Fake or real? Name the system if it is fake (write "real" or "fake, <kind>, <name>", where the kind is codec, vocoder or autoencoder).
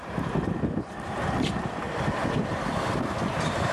fake, vocoder, BigVGAN v2